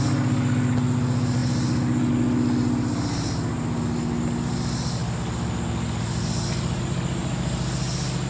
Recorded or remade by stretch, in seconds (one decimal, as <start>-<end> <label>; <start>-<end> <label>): 0.0-8.3 recorded